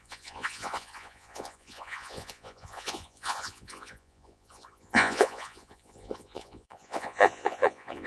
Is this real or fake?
fake